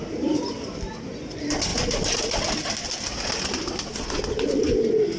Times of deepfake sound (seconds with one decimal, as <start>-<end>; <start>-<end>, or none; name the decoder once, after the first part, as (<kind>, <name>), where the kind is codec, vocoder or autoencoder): none